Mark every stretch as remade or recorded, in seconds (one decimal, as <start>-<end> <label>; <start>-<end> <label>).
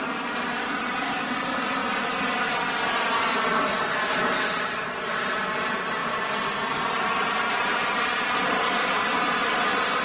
0.0-1.8 remade; 1.8-4.1 recorded; 4.1-10.0 remade